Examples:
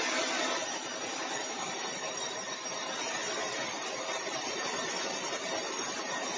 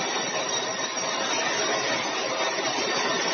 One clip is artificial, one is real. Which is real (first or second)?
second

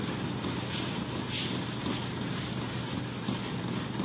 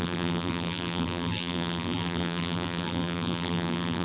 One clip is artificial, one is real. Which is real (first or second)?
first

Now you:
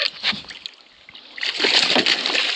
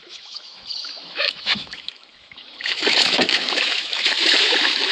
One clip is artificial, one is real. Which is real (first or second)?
first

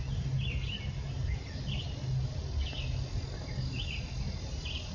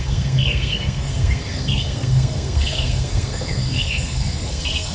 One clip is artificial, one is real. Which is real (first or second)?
first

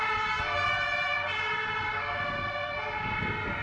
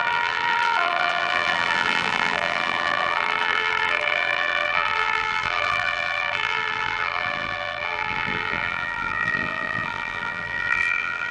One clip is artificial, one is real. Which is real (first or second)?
first